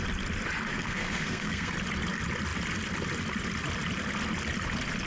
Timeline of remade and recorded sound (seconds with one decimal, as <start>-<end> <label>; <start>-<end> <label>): 0.0-0.7 recorded; 0.7-1.7 remade; 1.7-5.1 recorded